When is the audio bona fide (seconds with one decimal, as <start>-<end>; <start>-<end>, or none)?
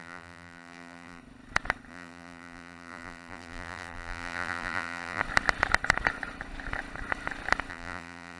1.2-1.9; 5.2-7.7